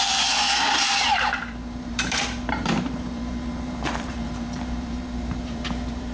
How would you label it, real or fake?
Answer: fake